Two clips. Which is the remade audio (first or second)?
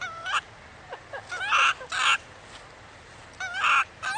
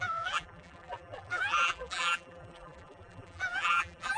second